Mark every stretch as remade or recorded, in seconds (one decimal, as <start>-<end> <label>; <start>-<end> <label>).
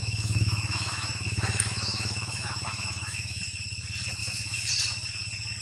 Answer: 0.0-3.4 remade; 3.4-4.2 recorded; 4.2-4.7 remade; 4.7-5.6 recorded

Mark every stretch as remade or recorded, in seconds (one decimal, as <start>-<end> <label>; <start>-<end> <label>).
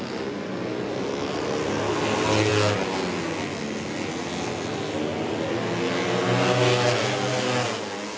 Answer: 0.0-8.2 recorded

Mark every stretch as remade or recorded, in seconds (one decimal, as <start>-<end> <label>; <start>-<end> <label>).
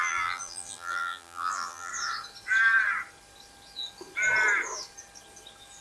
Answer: 0.0-1.9 remade; 1.9-5.8 recorded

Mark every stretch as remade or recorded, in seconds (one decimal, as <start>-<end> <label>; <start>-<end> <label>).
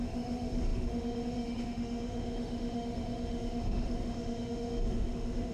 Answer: 0.0-5.5 remade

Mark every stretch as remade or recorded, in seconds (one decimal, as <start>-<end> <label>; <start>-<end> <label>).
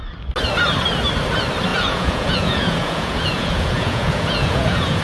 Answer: 0.0-1.7 recorded; 1.7-5.0 remade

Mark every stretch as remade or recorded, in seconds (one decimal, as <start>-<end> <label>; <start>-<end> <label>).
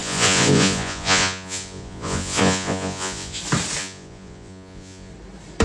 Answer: 0.0-3.4 remade; 3.4-3.8 recorded; 3.8-5.1 remade; 5.1-5.6 recorded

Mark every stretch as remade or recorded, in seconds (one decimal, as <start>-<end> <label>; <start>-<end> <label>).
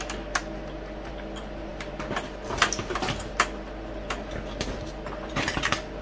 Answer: 0.0-6.0 recorded